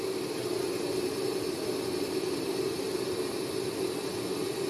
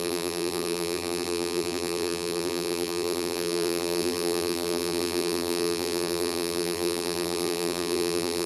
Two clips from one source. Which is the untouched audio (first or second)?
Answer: first